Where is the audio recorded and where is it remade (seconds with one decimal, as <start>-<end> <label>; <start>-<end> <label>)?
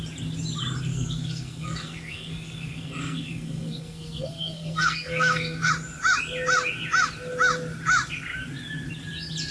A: 0.0-0.9 recorded; 0.9-5.7 remade; 5.7-9.5 recorded